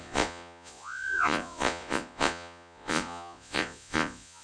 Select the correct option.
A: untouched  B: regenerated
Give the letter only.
B